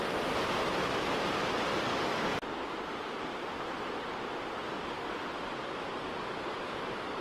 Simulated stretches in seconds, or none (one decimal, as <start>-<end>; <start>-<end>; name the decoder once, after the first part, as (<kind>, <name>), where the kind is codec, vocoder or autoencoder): none